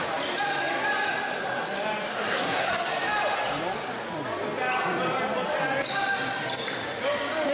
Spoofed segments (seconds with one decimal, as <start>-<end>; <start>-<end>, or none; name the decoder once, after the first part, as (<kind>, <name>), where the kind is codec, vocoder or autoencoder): 2.1-2.7 (codec, SNAC)